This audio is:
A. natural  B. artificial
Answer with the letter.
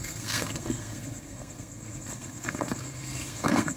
B